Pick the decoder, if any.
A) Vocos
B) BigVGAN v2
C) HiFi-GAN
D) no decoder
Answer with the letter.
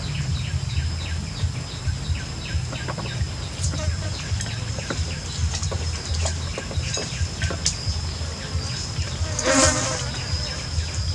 D